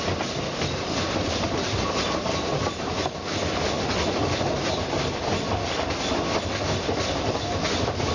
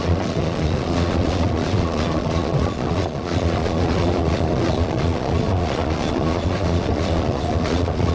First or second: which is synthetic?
second